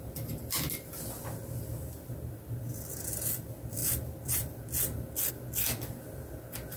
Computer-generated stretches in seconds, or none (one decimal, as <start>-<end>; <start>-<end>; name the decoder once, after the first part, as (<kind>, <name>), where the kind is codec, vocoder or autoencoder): none